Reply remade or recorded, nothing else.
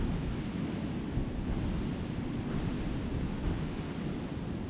recorded